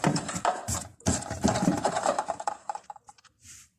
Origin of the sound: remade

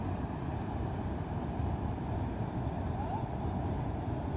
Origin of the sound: remade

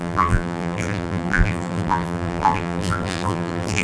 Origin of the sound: remade